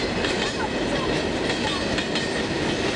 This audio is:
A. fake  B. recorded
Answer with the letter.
B